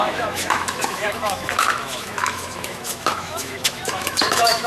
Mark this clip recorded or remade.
remade